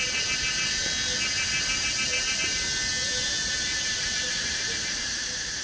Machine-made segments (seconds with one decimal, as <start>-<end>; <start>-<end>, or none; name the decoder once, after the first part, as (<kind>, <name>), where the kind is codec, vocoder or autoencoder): none